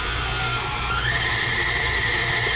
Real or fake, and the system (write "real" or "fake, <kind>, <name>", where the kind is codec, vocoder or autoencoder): fake, vocoder, BigVGAN v2